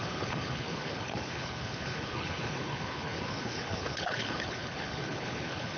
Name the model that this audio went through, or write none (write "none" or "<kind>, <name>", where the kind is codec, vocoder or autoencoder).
codec, HILCodec